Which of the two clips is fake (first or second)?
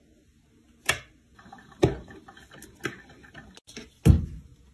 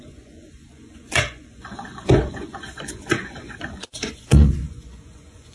second